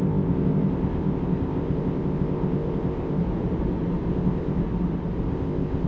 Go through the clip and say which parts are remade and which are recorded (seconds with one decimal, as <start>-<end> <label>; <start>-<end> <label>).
0.0-3.2 remade; 3.2-4.1 recorded; 4.1-4.6 remade; 4.6-5.3 recorded; 5.3-5.9 remade